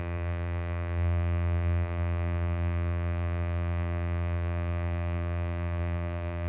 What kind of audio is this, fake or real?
fake